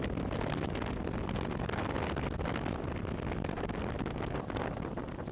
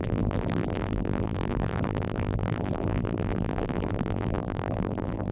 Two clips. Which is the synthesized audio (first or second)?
second